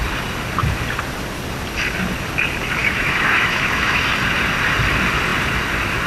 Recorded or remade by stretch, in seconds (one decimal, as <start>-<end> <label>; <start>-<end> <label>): 0.0-2.8 recorded; 2.8-4.0 remade; 4.0-6.1 recorded